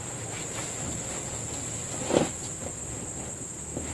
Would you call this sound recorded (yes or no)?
yes